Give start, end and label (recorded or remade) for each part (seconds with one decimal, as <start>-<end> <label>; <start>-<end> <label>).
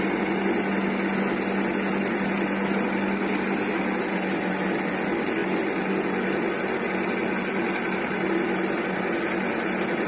0.0-10.1 recorded